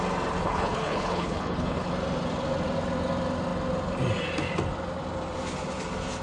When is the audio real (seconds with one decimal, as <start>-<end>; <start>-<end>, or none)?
0.0-0.4; 1.9-6.2